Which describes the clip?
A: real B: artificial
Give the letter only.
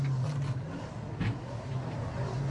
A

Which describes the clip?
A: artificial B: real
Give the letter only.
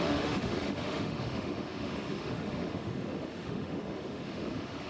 A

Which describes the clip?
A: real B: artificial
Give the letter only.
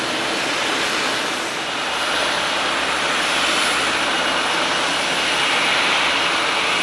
A